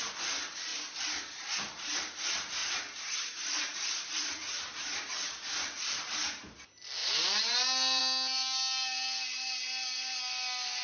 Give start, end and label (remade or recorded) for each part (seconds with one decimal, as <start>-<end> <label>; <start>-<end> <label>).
0.0-0.7 recorded; 0.7-1.6 remade; 1.6-2.6 recorded; 2.6-6.6 remade; 6.6-7.0 recorded; 7.0-8.0 remade; 8.0-10.8 recorded